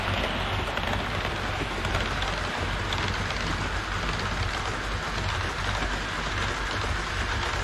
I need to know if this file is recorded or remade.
recorded